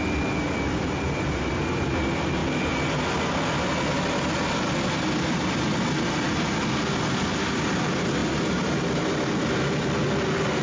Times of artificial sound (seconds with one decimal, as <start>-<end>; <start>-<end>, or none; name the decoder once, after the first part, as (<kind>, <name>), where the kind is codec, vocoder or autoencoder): none